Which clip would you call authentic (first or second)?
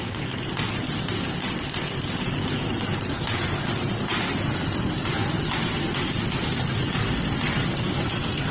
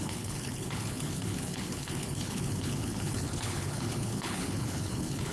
first